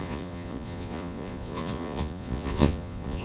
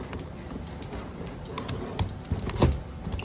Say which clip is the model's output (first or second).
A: first